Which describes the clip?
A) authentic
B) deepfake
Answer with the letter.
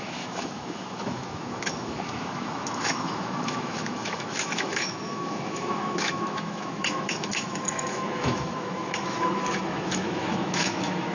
B